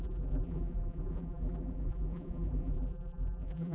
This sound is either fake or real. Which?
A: fake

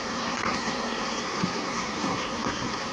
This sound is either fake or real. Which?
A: fake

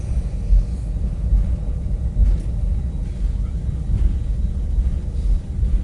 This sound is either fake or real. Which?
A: real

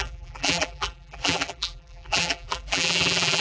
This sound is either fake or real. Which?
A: fake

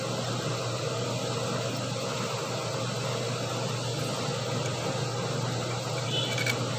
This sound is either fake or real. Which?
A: real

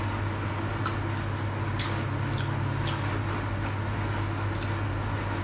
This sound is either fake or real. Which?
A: real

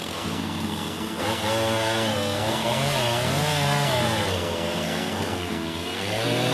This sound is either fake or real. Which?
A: fake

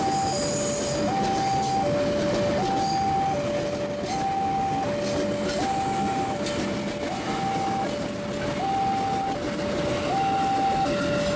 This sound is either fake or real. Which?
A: real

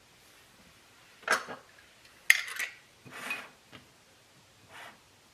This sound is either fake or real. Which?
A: real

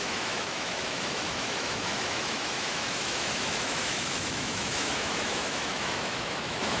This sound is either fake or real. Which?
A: fake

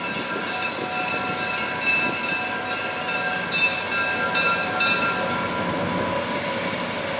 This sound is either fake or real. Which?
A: real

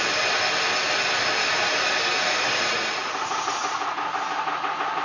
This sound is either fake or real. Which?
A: real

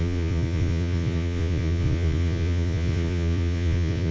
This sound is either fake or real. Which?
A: fake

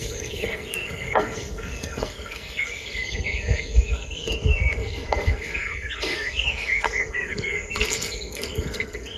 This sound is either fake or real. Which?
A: fake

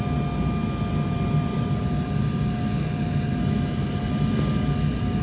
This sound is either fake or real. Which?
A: real